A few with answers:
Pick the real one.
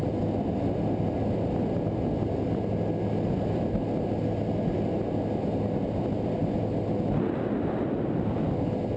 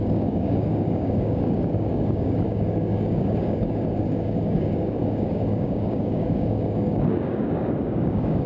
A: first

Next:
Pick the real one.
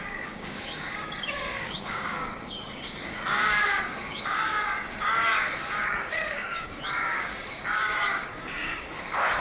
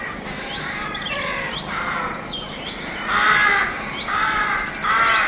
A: second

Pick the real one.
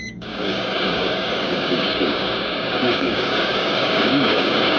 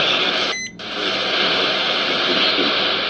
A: second